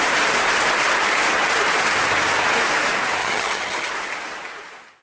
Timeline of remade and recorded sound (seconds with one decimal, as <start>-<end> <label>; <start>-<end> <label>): 0.0-3.2 recorded; 3.2-3.9 remade; 3.9-5.0 recorded